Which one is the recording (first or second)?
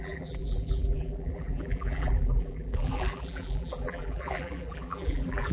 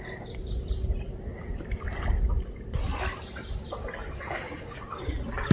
second